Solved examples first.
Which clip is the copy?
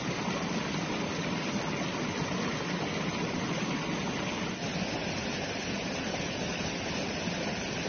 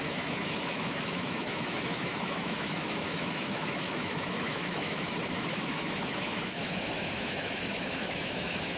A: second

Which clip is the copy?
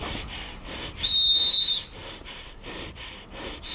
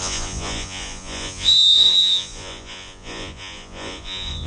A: second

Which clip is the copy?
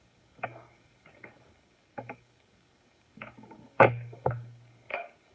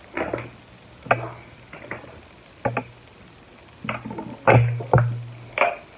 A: first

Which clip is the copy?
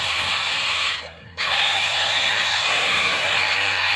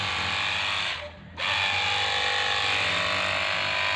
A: first